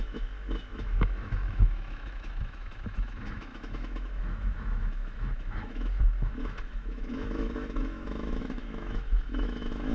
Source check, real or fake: fake